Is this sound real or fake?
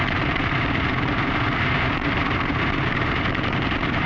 fake